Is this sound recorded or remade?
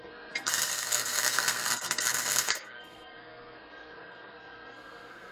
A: remade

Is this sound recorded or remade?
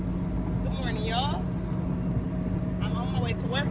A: recorded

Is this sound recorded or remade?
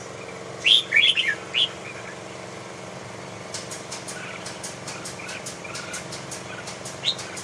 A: recorded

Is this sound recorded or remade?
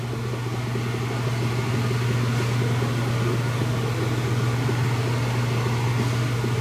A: recorded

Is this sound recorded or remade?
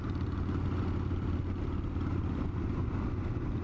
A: recorded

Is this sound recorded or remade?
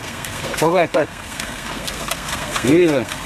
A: remade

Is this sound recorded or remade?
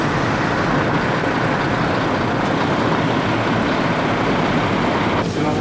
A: recorded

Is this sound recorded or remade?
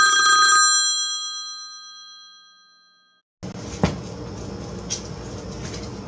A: recorded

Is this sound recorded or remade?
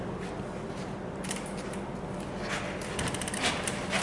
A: recorded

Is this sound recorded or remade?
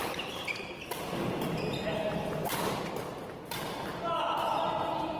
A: recorded